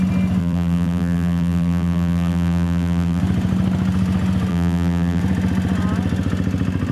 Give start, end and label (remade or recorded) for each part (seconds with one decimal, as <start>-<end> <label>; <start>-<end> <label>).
0.0-0.4 recorded; 0.4-3.2 remade; 3.2-4.5 recorded; 4.5-5.2 remade; 5.2-6.9 recorded